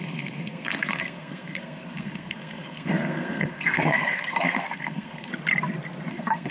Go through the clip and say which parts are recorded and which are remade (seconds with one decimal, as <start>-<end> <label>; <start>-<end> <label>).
0.0-5.3 remade; 5.3-6.1 recorded; 6.1-6.5 remade

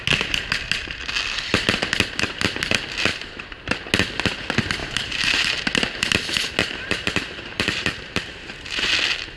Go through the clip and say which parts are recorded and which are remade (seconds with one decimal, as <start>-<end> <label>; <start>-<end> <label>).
0.0-3.1 recorded; 3.1-3.7 remade; 3.7-4.8 recorded; 4.8-5.6 remade; 5.6-6.6 recorded; 6.6-8.9 remade; 8.9-9.4 recorded

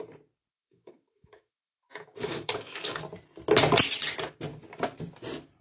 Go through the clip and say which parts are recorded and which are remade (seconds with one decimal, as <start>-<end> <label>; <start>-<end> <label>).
0.0-0.5 recorded; 0.5-3.0 remade; 3.0-5.6 recorded